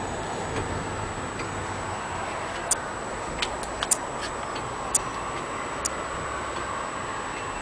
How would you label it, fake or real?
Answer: real